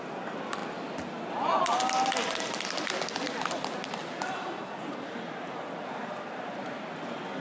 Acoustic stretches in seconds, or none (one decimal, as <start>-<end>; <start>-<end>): 0.0-7.4